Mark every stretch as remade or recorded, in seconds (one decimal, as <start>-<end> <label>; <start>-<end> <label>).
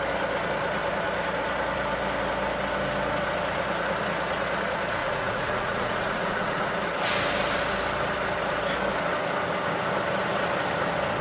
0.0-5.0 recorded; 5.0-6.7 remade; 6.7-11.2 recorded